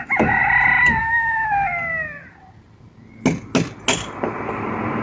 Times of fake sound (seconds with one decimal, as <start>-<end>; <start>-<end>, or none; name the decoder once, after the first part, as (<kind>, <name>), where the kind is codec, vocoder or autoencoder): 0.0-0.4 (autoencoder, DAC-VAE); 1.0-1.7